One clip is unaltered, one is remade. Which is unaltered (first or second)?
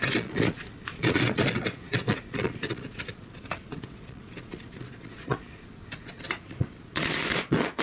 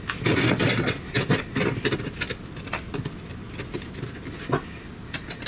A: second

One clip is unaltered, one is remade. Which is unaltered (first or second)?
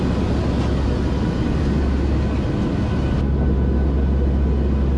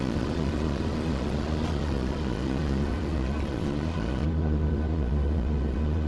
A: first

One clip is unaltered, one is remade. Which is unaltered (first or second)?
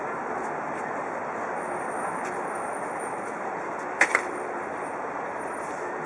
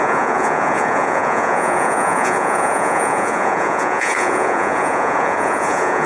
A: first